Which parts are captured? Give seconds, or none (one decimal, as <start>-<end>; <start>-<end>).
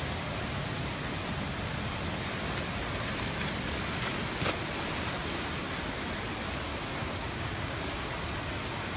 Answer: 0.0-6.7; 8.1-9.0